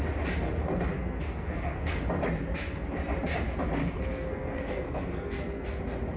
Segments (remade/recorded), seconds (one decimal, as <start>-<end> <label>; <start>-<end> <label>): 0.0-0.6 recorded; 0.6-1.9 remade; 1.9-3.8 recorded; 3.8-5.8 remade; 5.8-6.2 recorded